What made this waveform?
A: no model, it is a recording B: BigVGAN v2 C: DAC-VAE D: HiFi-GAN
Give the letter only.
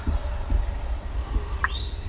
A